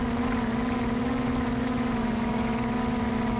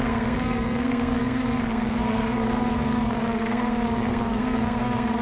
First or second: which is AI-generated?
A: second